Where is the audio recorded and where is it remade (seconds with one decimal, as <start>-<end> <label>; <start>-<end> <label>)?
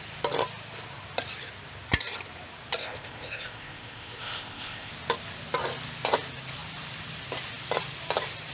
0.0-2.8 recorded; 2.8-4.9 remade; 4.9-8.5 recorded